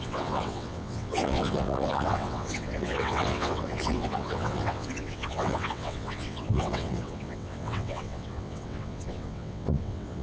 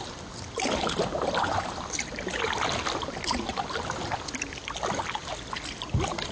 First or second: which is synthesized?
first